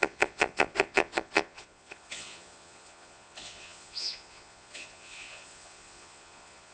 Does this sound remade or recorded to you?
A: remade